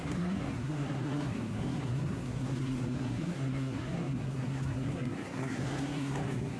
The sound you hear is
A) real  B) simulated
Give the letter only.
B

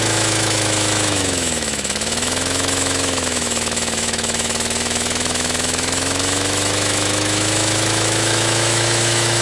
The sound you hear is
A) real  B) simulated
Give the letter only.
B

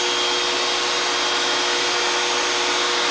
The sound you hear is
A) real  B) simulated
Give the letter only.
A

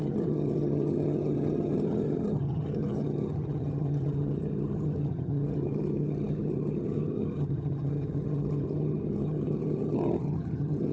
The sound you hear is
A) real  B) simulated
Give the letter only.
B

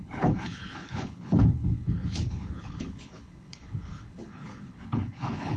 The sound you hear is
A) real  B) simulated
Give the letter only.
B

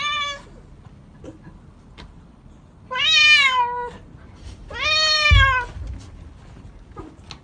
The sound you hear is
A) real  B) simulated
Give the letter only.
A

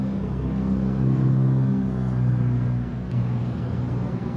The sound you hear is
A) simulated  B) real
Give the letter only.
A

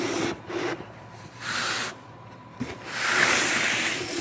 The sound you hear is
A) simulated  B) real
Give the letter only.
A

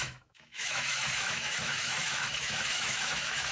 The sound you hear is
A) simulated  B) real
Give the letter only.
A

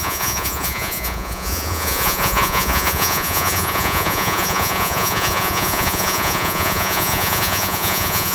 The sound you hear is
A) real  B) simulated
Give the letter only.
B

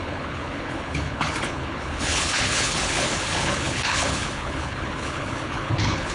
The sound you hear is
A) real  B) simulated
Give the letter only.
B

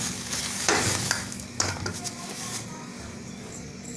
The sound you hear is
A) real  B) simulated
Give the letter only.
B